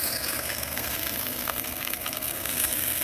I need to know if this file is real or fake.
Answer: fake